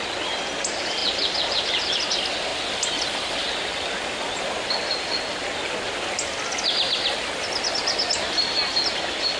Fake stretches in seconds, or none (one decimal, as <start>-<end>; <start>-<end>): none